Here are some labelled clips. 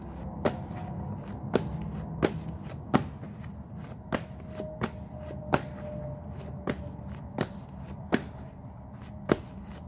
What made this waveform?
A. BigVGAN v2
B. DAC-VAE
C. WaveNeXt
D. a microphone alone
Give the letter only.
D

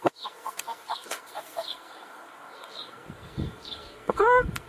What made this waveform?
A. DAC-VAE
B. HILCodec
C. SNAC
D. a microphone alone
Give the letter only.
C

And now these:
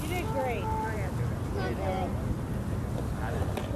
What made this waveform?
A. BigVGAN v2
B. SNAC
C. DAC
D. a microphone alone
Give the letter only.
D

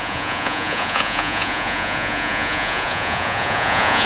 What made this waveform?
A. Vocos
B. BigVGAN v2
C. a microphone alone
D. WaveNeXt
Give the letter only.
A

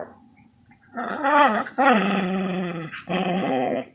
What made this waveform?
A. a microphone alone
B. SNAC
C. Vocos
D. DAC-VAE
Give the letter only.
C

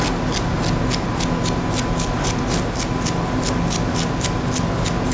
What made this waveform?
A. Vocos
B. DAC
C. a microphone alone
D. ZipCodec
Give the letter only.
C